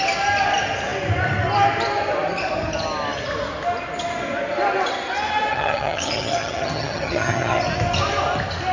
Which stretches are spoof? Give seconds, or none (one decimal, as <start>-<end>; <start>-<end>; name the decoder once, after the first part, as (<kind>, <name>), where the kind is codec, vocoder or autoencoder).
5.5-7.6 (vocoder, HiFi-GAN)